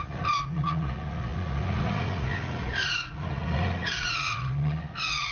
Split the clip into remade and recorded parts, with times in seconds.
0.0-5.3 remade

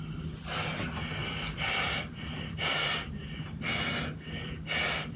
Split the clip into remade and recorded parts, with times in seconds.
0.0-1.2 recorded; 1.2-3.3 remade; 3.3-5.2 recorded

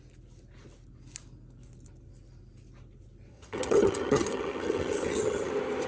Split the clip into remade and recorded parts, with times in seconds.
0.0-3.3 recorded; 3.3-5.5 remade; 5.5-5.9 recorded